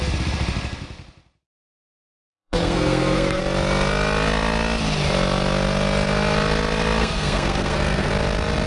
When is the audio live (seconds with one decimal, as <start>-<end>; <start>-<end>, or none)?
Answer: 0.0-1.7; 3.4-7.0; 8.1-8.7